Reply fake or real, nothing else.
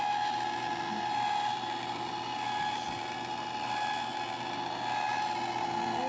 real